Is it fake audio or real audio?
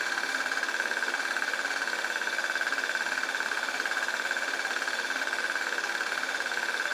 fake